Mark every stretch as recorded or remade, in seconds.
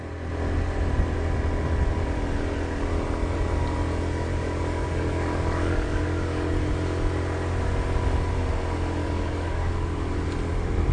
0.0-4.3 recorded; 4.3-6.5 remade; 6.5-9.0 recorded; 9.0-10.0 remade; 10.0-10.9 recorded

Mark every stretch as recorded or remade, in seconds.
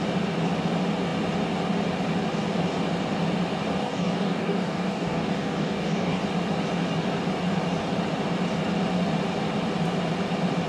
0.0-3.8 recorded; 3.8-6.2 remade; 6.2-10.7 recorded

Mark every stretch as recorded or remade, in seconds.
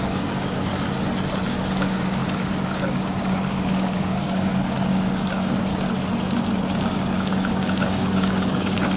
0.0-0.7 remade; 0.7-1.5 recorded; 1.5-5.7 remade; 5.7-6.9 recorded; 6.9-9.0 remade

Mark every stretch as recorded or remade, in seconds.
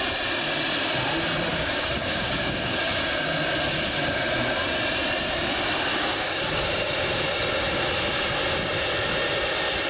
0.0-1.5 recorded; 1.5-2.9 remade; 2.9-5.9 recorded; 5.9-6.8 remade; 6.8-9.9 recorded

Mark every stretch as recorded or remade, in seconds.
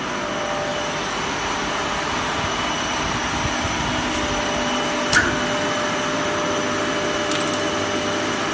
0.0-8.5 recorded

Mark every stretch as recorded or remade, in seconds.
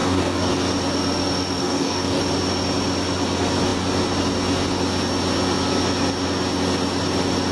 0.0-0.5 remade; 0.5-1.6 recorded; 1.6-2.2 remade; 2.2-7.5 recorded